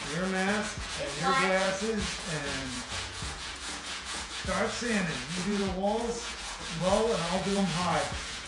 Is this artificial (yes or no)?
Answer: yes